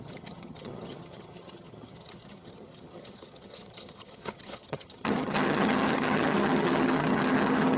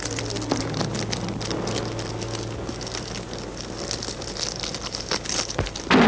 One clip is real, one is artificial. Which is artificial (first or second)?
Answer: first